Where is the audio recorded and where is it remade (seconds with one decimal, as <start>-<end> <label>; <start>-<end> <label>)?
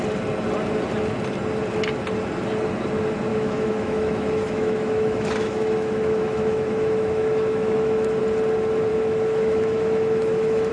0.0-3.3 recorded; 3.3-8.2 remade; 8.2-8.9 recorded; 8.9-10.7 remade